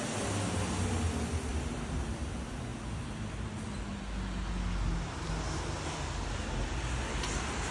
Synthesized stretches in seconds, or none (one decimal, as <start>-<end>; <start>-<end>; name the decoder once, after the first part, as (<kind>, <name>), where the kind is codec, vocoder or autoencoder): none